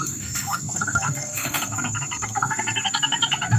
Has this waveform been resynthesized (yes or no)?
yes